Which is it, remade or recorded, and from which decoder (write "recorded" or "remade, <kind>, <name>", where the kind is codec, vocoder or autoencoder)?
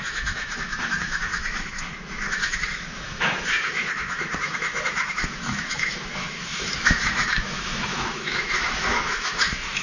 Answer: remade, autoencoder, DAC-VAE